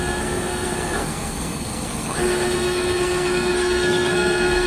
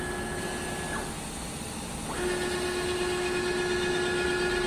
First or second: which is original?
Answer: second